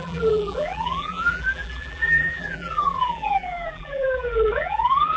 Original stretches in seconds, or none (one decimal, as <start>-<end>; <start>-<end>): none